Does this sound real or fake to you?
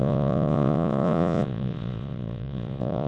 fake